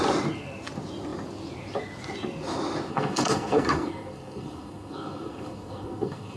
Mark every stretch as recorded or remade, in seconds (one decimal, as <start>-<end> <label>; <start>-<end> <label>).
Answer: 0.0-2.9 recorded; 2.9-6.4 remade